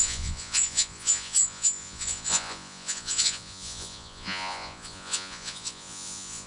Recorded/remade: remade